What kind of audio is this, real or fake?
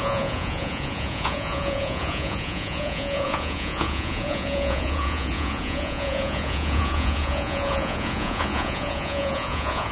fake